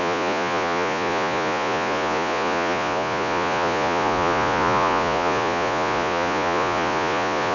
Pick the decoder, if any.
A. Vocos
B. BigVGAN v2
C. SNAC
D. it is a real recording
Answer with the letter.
A